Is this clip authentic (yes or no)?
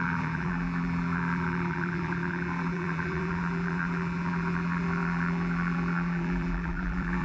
no